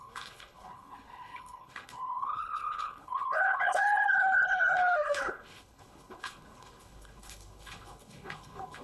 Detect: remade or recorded remade